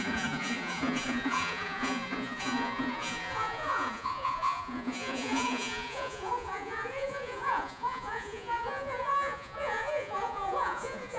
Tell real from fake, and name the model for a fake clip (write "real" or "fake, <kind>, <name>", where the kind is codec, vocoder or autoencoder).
fake, vocoder, Vocos